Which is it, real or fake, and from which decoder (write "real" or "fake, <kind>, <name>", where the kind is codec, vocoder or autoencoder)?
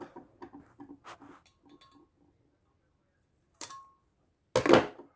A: real